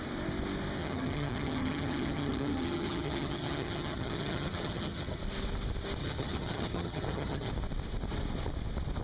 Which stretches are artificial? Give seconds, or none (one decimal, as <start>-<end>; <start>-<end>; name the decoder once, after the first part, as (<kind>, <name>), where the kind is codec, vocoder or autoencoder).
0.8-5.2 (vocoder, HiFi-GAN); 6.0-7.5